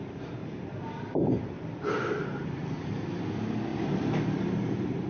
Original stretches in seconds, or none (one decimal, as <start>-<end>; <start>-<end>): 0.0-0.4; 3.2-3.7